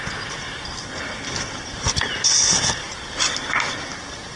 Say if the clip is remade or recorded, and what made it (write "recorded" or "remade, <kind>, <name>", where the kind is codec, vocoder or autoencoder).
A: recorded